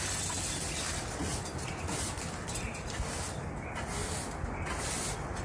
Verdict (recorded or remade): recorded